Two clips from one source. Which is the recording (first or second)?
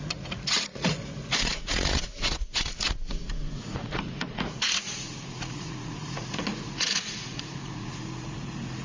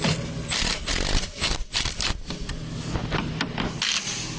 second